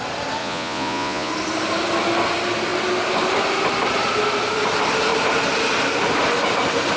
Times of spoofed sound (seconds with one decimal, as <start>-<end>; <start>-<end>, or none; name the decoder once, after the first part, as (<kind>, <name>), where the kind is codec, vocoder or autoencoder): 0.4-1.3 (vocoder, Vocos)